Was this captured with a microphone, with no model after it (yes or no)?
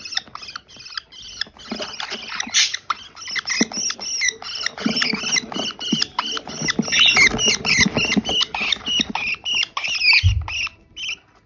yes